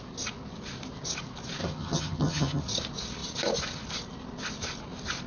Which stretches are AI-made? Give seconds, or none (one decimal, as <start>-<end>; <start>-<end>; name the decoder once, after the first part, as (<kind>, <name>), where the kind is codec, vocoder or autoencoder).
1.6-2.6 (vocoder, HiFi-GAN)